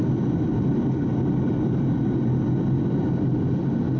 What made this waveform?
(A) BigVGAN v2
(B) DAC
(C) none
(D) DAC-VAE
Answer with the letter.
C